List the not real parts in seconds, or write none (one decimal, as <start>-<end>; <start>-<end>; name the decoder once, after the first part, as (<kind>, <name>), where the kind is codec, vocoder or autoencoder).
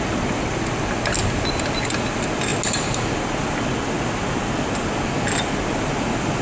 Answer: none